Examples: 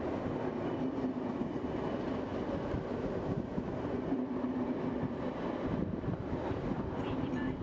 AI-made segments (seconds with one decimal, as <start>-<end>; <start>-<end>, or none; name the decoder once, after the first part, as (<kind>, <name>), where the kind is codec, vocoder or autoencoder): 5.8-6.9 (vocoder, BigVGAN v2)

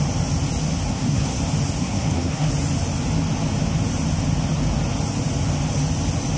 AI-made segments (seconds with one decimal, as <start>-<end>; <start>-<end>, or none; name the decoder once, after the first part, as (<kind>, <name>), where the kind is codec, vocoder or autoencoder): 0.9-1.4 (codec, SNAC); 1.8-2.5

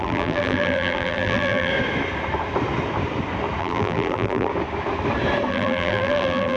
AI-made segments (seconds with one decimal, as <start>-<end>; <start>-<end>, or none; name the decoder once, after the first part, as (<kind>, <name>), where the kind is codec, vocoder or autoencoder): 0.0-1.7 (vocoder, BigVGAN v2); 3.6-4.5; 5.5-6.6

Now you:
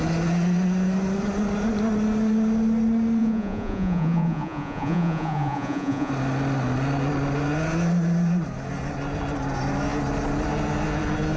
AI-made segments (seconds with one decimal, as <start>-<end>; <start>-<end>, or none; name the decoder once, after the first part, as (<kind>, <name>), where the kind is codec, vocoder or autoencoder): 3.2-6.1 (vocoder, Vocos)

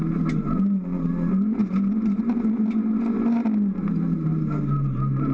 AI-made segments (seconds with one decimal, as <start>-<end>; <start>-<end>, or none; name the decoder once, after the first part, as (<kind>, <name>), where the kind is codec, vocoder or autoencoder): none